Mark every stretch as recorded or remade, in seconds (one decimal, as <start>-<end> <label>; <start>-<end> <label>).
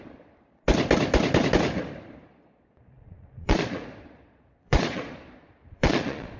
0.0-2.3 recorded; 2.3-6.4 remade